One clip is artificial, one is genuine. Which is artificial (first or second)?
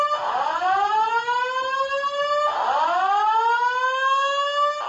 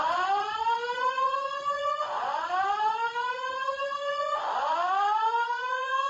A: second